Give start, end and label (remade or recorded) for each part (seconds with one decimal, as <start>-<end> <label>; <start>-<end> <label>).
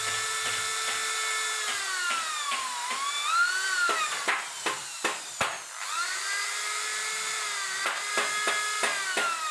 0.0-9.5 recorded